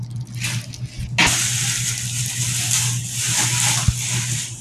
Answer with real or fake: real